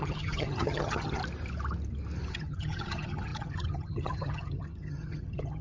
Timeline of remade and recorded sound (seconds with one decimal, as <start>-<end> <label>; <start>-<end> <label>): 0.0-1.2 remade; 1.2-2.3 recorded; 2.3-5.6 remade